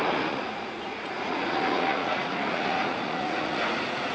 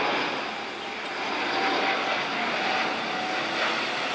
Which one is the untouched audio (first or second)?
second